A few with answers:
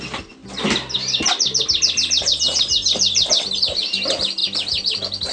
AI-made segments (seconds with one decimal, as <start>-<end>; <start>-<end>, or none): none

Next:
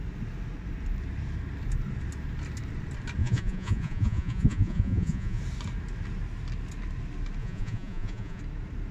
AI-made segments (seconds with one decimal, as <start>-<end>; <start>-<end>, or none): 3.2-5.4; 7.4-8.4

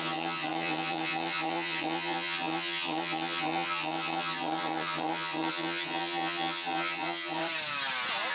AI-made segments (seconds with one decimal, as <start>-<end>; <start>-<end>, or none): 0.0-7.4

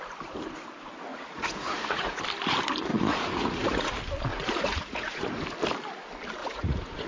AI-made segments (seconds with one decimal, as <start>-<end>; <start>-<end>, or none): 1.1-2.2; 2.9-3.9; 4.3-5.4; 6.4-7.1